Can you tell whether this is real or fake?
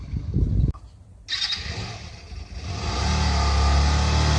real